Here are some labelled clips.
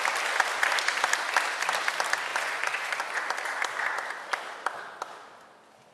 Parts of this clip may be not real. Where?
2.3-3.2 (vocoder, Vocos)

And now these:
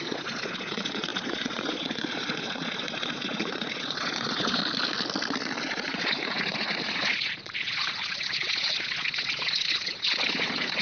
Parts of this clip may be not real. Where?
0.0-4.6 (vocoder, Vocos); 5.6-10.8

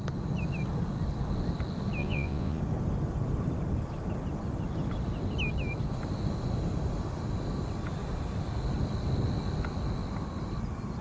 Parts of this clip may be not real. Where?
2.0-2.6 (vocoder, Vocos)

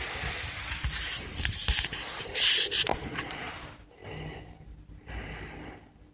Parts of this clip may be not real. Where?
2.9-3.5 (vocoder, Vocos)

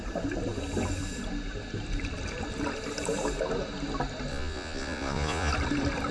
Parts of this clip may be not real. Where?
4.3-5.5 (vocoder, Vocos)

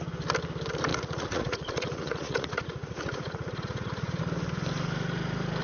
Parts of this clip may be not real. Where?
0.9-4.2 (vocoder, Vocos)

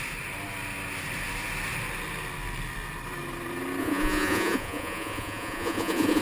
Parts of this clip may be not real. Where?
3.8-6.2 (vocoder, Vocos)

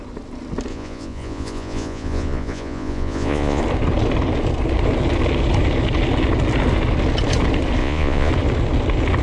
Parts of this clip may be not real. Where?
0.7-3.6 (vocoder, Vocos); 7.8-8.3